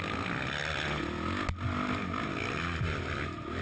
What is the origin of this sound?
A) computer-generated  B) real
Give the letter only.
B